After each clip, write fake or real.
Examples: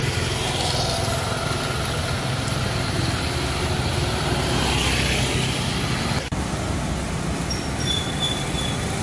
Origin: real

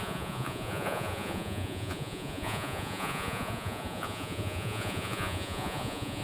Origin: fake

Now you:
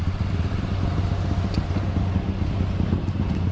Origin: real